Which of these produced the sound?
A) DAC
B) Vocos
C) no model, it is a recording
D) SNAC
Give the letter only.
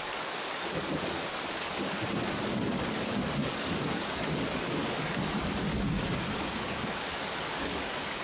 A